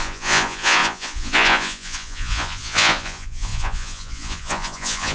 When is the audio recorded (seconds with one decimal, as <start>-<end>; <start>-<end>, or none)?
none